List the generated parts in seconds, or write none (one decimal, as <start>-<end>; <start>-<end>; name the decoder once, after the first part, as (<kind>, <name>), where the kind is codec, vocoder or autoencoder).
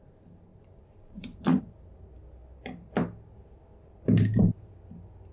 0.5-1.6 (vocoder, BigVGAN v2)